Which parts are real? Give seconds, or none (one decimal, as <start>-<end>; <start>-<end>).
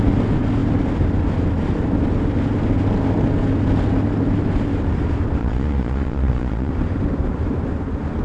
0.0-5.4; 6.7-8.2